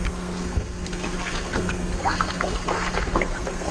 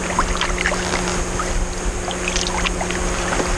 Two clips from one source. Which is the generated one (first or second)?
first